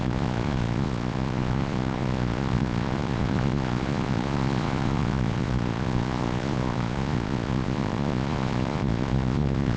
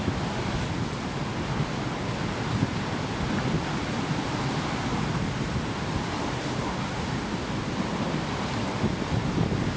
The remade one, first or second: first